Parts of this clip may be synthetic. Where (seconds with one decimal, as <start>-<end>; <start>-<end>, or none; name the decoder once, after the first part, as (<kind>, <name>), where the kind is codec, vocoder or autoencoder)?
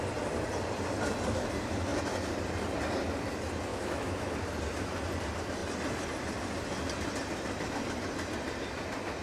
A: 3.7-4.3 (autoencoder, DAC-VAE)